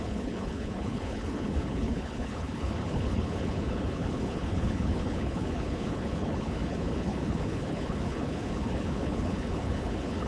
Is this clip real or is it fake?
fake